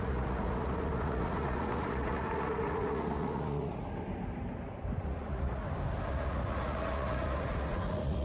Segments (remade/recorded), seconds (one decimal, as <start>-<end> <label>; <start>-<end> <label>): 0.0-3.8 remade; 3.8-5.0 recorded; 5.0-5.6 remade; 5.6-6.1 recorded; 6.1-8.2 remade